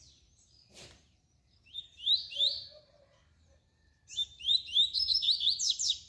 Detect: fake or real fake